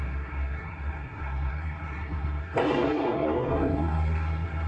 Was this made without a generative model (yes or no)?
no